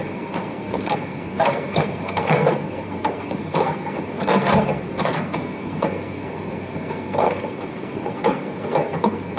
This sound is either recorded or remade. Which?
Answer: remade